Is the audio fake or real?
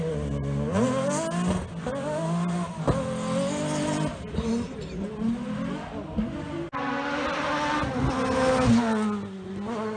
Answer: real